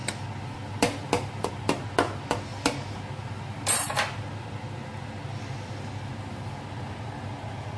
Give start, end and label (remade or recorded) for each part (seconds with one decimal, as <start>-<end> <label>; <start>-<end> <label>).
0.0-7.8 recorded